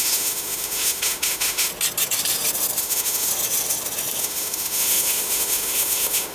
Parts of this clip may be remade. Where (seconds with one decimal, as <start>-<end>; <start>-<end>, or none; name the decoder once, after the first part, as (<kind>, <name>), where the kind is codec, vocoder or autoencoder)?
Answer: 0.0-1.7 (autoencoder, DAC-VAE); 2.8-3.3; 4.2-6.3